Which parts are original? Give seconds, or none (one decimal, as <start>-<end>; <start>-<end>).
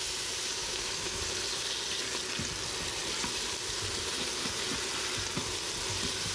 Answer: 0.0-0.6; 1.2-6.3